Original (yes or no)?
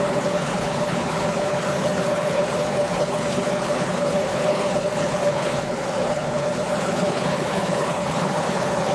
no